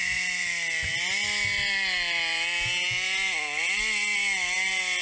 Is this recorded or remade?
recorded